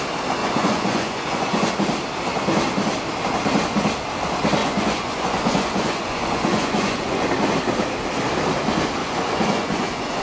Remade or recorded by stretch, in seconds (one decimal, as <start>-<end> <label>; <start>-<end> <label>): 0.0-0.4 recorded; 0.4-1.7 remade; 1.7-4.6 recorded; 4.6-7.3 remade; 7.3-9.0 recorded; 9.0-10.2 remade